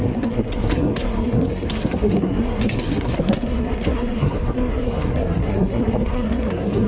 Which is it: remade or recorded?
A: remade